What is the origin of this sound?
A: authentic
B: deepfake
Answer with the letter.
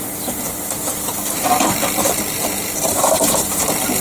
A